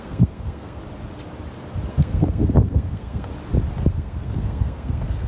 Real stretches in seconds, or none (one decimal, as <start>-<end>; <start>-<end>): 0.8-1.9; 3.3-3.9